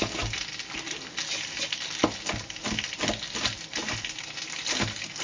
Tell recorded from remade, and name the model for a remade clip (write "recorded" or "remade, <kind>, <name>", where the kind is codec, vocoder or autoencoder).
recorded